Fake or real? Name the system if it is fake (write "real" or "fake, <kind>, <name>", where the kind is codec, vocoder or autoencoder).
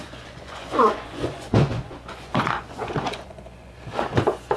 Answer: fake, vocoder, Vocos